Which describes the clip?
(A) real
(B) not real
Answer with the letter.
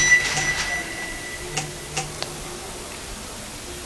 A